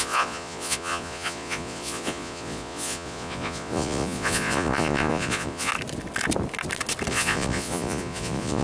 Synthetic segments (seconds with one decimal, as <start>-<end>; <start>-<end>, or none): 0.0-5.7; 7.1-8.6